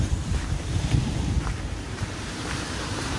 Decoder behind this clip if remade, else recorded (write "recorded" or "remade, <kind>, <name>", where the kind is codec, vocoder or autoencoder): remade, vocoder, BigVGAN v2